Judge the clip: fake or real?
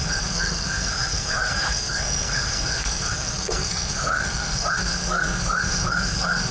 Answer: fake